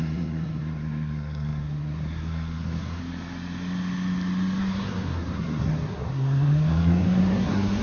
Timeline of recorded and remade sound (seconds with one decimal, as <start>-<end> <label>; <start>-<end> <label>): 0.0-3.0 remade; 3.0-4.6 recorded; 4.6-7.8 remade